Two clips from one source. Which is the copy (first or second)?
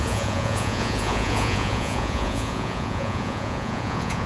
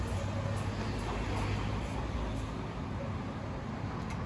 first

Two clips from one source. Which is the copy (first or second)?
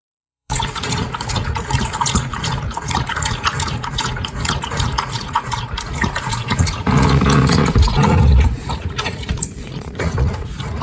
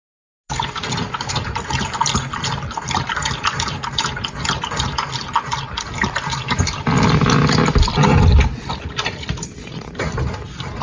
first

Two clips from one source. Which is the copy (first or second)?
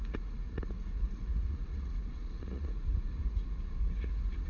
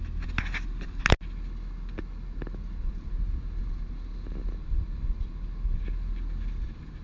first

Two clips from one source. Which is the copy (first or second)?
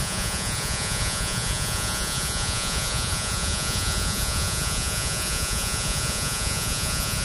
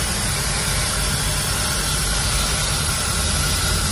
first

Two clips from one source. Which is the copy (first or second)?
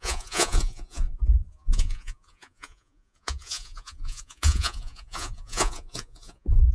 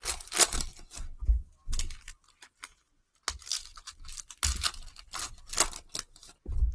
first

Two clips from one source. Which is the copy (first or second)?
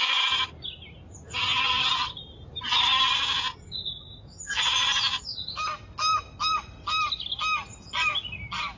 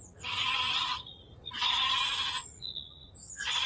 second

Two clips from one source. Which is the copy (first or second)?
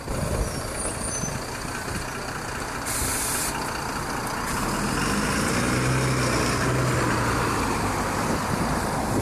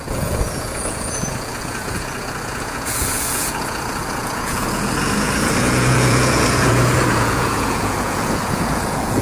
second